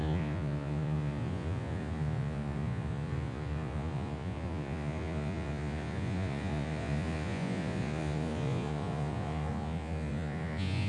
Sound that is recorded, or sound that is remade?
remade